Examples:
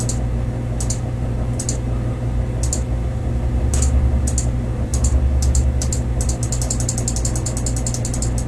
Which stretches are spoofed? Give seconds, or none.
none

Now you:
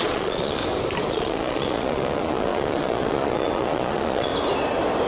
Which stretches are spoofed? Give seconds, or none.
0.0-0.6 (vocoder, Vocos); 1.1-4.3

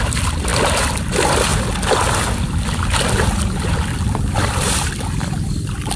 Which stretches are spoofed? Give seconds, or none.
0.0-1.5 (vocoder, BigVGAN v2); 3.5-6.0

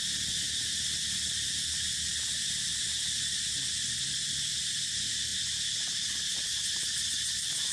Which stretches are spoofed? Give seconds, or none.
none

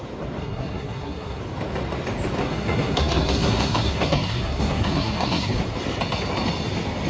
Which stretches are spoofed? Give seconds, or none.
0.4-1.4 (codec, SNAC); 2.4-5.6

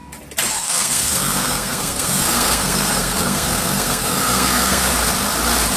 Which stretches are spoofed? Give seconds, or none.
0.5-4.9 (codec, SNAC)

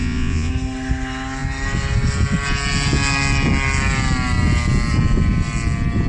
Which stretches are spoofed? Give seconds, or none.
0.0-0.5 (vocoder, Vocos)